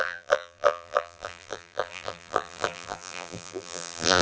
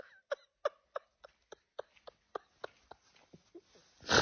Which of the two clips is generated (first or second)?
first